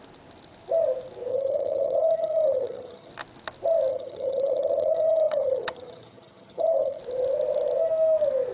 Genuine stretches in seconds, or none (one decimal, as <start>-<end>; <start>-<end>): 0.0-1.3; 3.1-3.9; 7.0-8.5